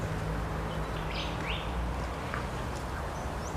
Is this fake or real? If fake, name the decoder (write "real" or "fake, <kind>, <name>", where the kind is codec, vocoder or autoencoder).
real